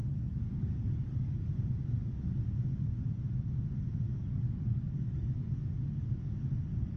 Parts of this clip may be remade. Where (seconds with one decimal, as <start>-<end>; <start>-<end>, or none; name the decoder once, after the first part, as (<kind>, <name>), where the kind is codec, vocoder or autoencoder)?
0.0-1.5 (codec, DAC); 4.1-5.7